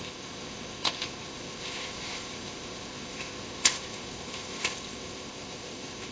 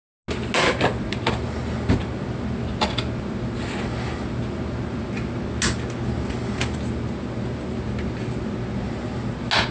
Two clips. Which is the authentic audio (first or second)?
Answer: second